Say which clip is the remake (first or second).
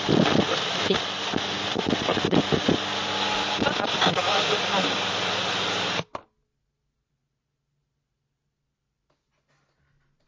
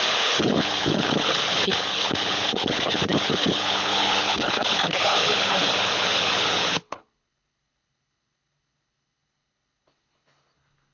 second